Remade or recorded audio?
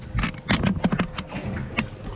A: recorded